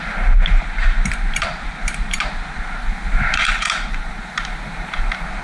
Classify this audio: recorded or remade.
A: remade